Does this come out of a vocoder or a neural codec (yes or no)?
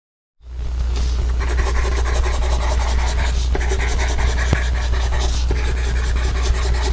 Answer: no